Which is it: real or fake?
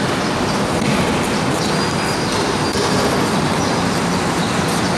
real